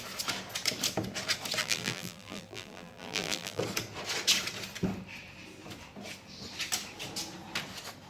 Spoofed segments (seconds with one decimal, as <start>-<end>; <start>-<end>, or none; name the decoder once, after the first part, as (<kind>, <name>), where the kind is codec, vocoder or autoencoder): 1.6-3.6 (vocoder, BigVGAN v2)